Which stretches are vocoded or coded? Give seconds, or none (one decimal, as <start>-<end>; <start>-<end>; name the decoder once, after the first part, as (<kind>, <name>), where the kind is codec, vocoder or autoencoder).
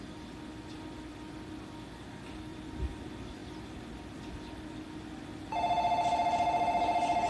2.5-3.0 (vocoder, BigVGAN v2)